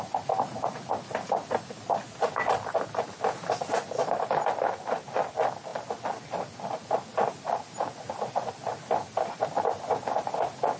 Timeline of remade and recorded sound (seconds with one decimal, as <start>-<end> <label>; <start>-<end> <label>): 0.0-10.8 recorded